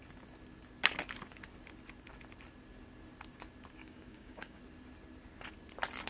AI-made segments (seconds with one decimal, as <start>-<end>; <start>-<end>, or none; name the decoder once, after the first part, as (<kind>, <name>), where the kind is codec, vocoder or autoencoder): 3.8-4.6 (codec, DAC)